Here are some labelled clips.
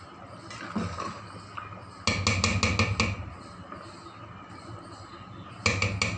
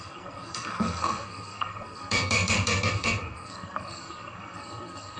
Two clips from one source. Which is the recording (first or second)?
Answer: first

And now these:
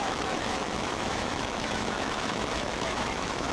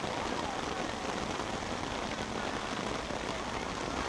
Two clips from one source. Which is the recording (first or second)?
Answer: second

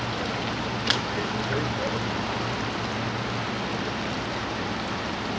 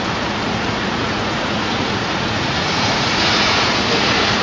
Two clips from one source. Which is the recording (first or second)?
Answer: first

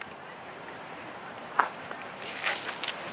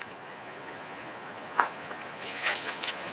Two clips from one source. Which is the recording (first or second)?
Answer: first